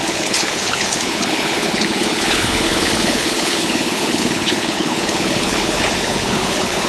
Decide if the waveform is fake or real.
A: fake